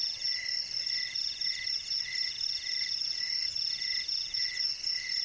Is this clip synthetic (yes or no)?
no